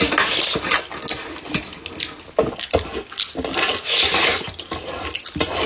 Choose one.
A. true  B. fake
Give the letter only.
A